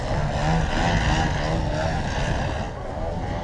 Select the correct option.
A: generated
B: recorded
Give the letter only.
B